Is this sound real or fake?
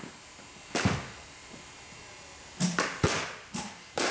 real